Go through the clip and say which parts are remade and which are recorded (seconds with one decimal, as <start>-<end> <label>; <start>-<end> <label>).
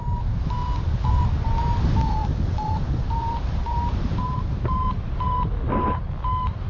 0.0-2.2 recorded; 2.2-4.4 remade; 4.4-6.7 recorded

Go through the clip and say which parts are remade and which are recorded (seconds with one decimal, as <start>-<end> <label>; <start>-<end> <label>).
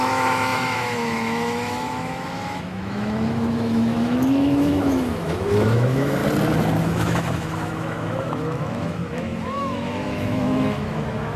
0.0-6.2 remade; 6.2-6.8 recorded; 6.8-11.4 remade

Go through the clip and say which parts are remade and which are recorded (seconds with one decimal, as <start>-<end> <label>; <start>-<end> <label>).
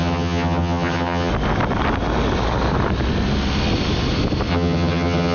0.0-1.3 remade; 1.3-4.5 recorded; 4.5-5.3 remade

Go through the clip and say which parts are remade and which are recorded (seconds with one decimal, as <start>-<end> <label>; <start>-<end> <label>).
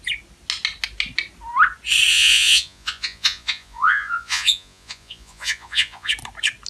0.0-2.1 recorded; 2.1-6.1 remade; 6.1-6.7 recorded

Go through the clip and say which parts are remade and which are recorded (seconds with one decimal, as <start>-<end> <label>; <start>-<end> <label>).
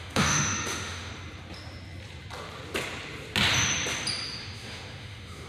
0.0-1.1 remade; 1.1-4.4 recorded; 4.4-5.5 remade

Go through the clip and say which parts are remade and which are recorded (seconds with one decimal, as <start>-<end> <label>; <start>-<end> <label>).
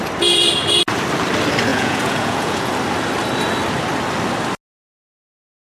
0.0-1.7 recorded; 1.7-2.7 remade; 2.7-5.7 recorded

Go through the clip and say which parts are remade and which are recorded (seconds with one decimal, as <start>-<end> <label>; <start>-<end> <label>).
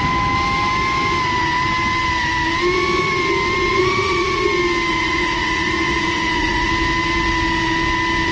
0.0-3.7 recorded; 3.7-4.4 remade; 4.4-4.9 recorded; 4.9-6.7 remade; 6.7-8.3 recorded